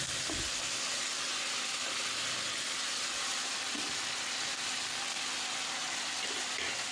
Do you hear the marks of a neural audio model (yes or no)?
no